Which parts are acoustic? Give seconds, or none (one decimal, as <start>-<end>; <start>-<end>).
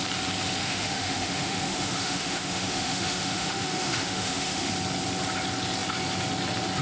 0.0-0.6; 4.7-6.8